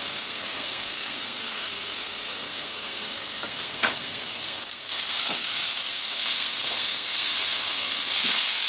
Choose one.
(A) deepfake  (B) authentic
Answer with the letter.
A